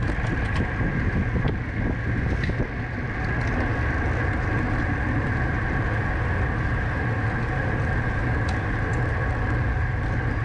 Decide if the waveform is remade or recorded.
recorded